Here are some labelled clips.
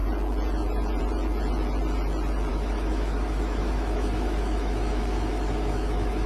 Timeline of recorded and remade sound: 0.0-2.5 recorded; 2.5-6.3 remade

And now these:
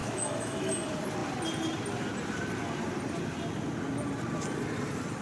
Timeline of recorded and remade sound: 0.0-0.7 remade; 0.7-5.2 recorded

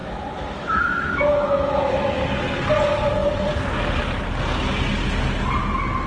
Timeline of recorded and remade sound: 0.0-2.2 remade; 2.2-6.1 recorded

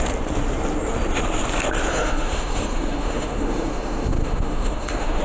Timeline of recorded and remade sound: 0.0-1.9 recorded; 1.9-5.2 remade

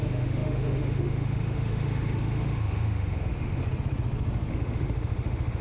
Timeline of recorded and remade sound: 0.0-3.6 remade; 3.6-4.5 recorded; 4.5-5.6 remade